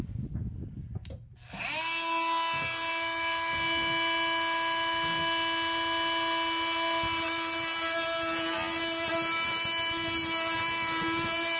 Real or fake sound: real